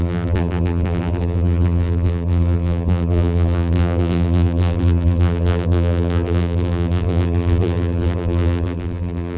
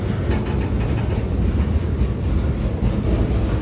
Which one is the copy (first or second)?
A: first